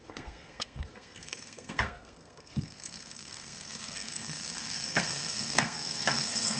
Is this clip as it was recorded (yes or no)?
no